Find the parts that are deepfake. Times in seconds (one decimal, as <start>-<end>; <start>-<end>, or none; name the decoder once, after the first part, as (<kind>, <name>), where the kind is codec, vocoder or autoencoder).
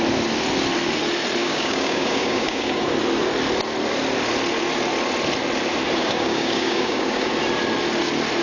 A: 1.4-2.8 (codec, DAC); 6.0-7.3